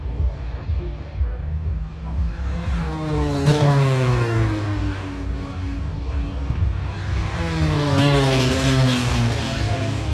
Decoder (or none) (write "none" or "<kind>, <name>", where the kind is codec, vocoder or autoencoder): codec, DAC